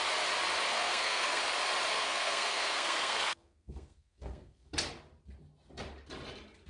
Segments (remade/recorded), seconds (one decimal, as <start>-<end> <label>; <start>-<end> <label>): 0.0-0.7 recorded; 0.7-1.4 remade; 1.4-1.9 recorded; 1.9-4.7 remade; 4.7-6.7 recorded